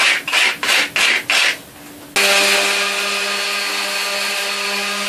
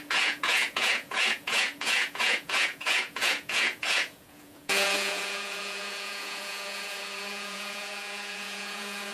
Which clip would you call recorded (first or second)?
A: first